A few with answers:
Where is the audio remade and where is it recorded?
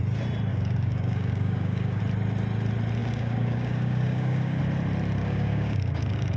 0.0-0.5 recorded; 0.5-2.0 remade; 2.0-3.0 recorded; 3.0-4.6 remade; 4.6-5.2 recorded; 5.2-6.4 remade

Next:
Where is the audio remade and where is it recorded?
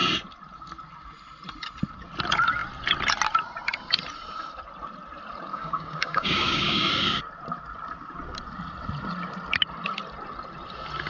0.0-5.5 recorded; 5.5-7.2 remade; 7.2-11.1 recorded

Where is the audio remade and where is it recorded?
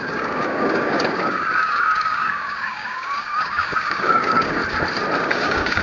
0.0-4.6 remade; 4.6-5.2 recorded; 5.2-5.8 remade